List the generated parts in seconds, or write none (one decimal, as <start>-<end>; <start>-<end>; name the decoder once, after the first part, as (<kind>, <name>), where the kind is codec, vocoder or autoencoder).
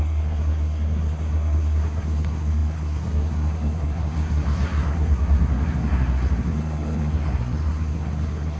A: 0.0-8.6 (codec, SNAC)